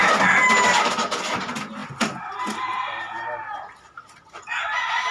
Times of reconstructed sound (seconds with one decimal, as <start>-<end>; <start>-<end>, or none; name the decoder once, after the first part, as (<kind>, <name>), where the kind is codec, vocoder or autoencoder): none